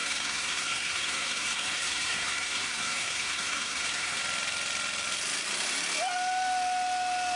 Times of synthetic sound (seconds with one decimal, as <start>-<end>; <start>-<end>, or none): 0.0-4.2